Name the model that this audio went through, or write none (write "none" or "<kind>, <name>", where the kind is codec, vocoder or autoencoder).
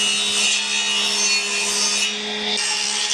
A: none